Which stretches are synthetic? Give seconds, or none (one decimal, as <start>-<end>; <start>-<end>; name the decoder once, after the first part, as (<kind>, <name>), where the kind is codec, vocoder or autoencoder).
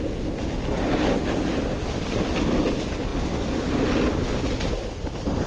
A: none